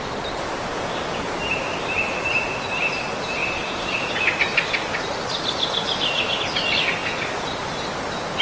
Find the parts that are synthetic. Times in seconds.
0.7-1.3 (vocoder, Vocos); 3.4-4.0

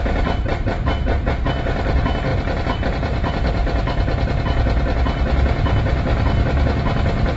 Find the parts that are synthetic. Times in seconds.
3.6-4.3 (vocoder, BigVGAN v2)

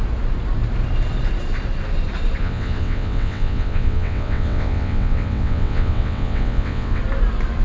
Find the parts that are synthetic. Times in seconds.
2.4-7.0 (vocoder, WaveNeXt)

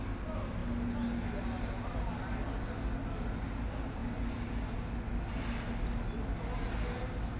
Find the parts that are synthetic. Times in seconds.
none

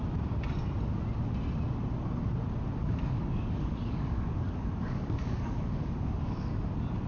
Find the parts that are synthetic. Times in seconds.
2.8-6.5 (codec, DAC)

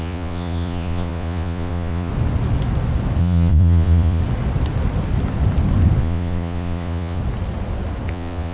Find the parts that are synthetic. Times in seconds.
0.0-2.1 (vocoder, Vocos); 3.2-4.2; 6.0-7.2; 8.1-8.5

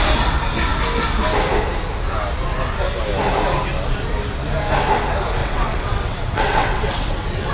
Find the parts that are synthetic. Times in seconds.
5.4-7.5 (vocoder, WaveNeXt)